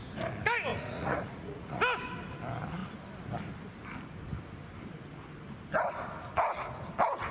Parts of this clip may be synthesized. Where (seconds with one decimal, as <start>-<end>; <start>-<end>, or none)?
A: 0.7-1.8